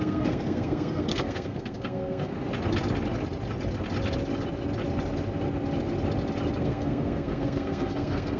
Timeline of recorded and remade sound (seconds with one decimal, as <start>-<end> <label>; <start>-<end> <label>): 0.0-2.3 remade; 2.3-6.6 recorded; 6.6-8.4 remade